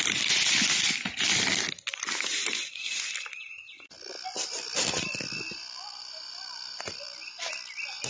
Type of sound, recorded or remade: recorded